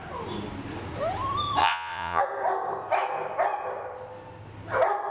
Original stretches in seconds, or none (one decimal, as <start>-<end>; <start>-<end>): 0.0-1.6; 2.2-5.1